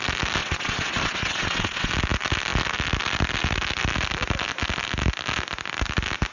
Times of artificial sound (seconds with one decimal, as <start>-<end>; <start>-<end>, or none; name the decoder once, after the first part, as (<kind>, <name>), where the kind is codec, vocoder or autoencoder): 0.4-1.9 (vocoder, WaveNeXt)